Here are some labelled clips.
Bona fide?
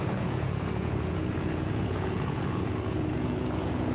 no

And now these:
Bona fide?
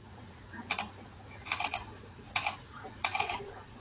no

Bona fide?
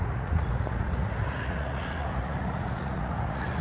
no